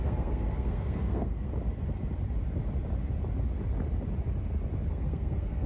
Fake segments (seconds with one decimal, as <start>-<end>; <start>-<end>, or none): 0.0-1.5; 4.9-5.7

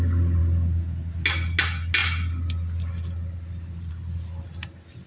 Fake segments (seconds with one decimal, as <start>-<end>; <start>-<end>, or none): none

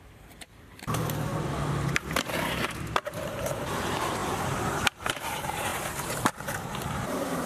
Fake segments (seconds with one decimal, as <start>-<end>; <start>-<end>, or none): 0.0-1.3; 2.1-7.5

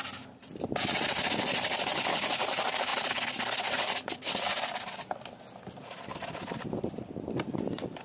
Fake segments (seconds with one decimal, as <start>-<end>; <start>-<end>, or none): none

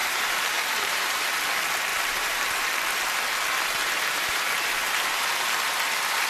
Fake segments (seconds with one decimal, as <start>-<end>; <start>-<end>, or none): 0.0-1.4; 1.9-3.0; 3.8-5.3

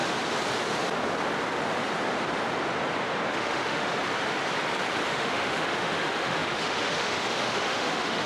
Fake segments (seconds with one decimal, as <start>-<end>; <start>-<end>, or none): 3.3-3.9; 5.1-8.3